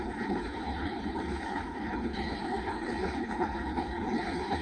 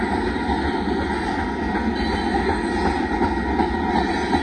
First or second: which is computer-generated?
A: first